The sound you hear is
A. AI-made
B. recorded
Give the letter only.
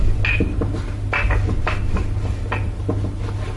B